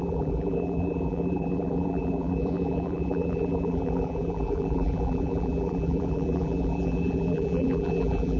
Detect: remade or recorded remade